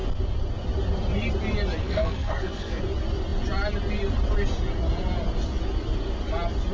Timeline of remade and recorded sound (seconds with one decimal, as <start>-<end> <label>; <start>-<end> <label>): 0.0-1.8 recorded; 1.8-2.8 remade; 2.8-6.7 recorded